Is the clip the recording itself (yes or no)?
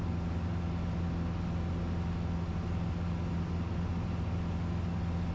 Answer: yes